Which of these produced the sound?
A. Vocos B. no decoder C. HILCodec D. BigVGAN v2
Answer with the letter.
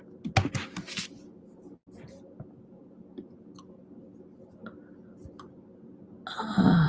B